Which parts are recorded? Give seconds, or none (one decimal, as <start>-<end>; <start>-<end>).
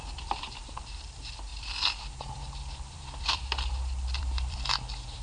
3.4-4.1